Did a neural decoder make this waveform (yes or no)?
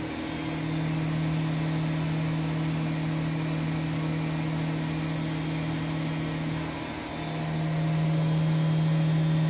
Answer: no